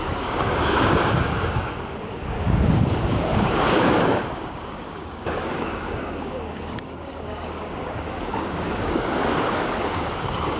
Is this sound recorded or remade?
remade